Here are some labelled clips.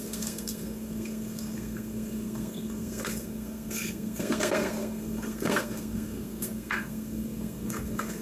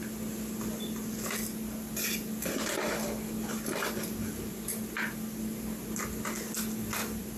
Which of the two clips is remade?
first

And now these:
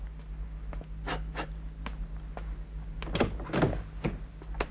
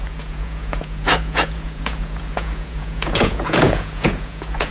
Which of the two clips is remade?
second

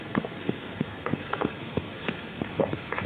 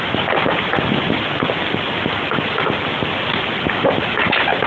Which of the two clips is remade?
first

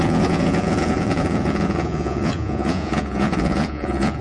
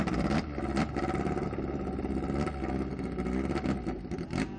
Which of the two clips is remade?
first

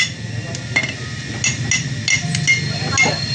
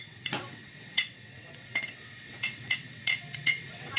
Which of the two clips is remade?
second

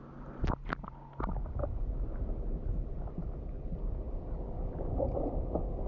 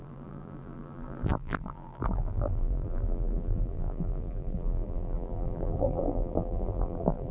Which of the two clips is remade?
second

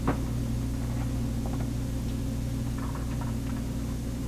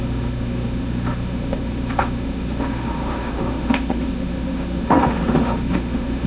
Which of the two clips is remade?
second